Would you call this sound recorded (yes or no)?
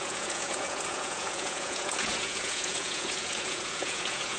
no